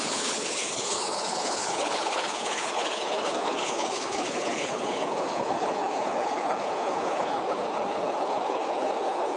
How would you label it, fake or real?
fake